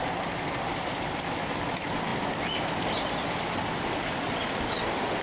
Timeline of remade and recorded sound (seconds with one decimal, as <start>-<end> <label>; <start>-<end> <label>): 0.0-2.1 remade; 2.1-4.0 recorded; 4.0-5.2 remade